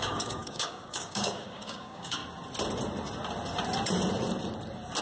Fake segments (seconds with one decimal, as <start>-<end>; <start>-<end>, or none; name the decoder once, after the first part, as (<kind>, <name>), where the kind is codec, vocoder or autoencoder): 0.0-2.2 (codec, DAC)